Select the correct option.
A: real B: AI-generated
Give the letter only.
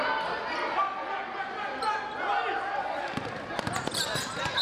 A